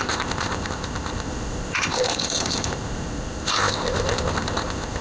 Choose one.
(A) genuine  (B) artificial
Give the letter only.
B